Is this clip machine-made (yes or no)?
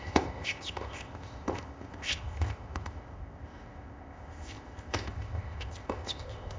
yes